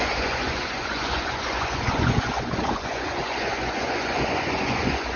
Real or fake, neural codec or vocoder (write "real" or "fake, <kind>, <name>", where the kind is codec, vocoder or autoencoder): fake, vocoder, Vocos